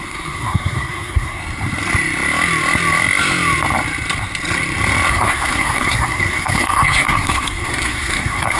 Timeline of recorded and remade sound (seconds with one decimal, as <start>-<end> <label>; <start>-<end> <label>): 0.0-1.4 remade; 1.4-5.1 recorded; 5.1-8.6 remade